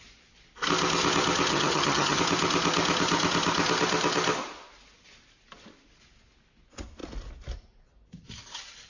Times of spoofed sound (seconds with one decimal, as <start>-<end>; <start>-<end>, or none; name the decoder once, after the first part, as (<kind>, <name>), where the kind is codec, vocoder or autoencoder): 1.5-2.2 (vocoder, HiFi-GAN)